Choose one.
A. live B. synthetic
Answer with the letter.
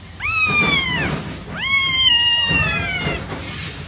B